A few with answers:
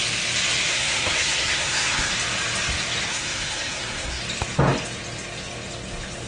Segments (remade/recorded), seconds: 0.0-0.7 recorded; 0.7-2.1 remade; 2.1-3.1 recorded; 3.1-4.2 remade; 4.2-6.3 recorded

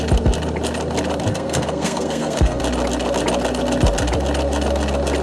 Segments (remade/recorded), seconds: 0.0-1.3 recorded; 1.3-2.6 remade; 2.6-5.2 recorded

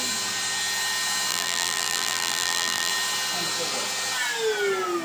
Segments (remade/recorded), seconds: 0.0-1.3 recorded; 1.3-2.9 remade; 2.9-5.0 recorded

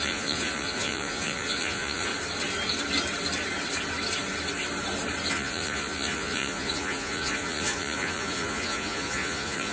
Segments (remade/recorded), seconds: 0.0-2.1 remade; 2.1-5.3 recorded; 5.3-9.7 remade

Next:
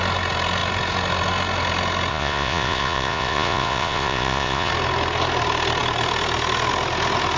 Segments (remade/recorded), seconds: 0.0-2.1 recorded; 2.1-4.7 remade; 4.7-7.4 recorded

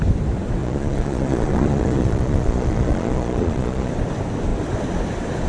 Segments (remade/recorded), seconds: 0.0-0.6 recorded; 0.6-3.9 remade; 3.9-5.5 recorded